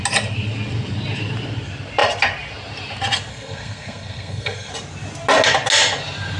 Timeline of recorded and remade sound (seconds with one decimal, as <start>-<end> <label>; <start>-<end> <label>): 0.0-3.3 recorded; 3.3-4.7 remade; 4.7-6.4 recorded